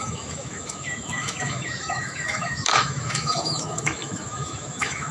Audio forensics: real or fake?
fake